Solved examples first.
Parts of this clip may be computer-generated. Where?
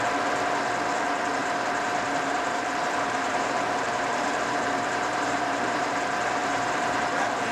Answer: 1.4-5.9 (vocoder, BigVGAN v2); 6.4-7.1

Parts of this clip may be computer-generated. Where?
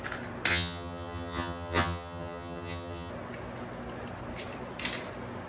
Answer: 0.5-3.1 (vocoder, HiFi-GAN)